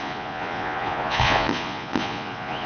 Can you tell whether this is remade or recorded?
remade